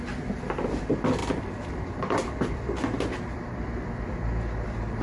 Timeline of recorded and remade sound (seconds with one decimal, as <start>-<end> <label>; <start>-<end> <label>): 0.0-1.2 recorded; 1.2-4.2 remade; 4.2-5.0 recorded